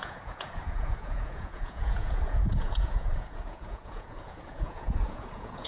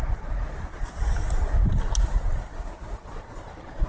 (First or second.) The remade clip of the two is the first